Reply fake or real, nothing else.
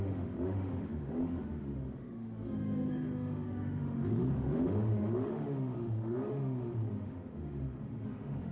fake